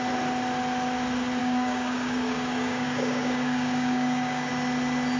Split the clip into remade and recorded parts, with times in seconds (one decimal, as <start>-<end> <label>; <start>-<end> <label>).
0.0-1.4 recorded; 1.4-4.5 remade; 4.5-5.2 recorded